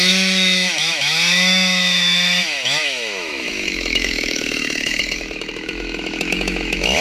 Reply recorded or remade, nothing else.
remade